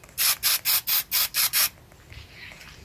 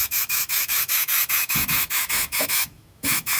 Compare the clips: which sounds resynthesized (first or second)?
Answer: second